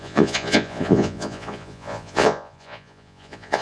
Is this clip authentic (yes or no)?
no